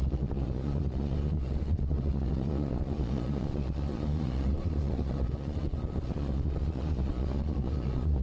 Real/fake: fake